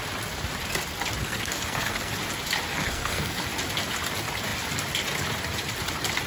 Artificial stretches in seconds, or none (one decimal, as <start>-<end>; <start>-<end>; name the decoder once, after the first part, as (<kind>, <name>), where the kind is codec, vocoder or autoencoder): 1.2-2.2 (codec, SNAC); 2.7-3.4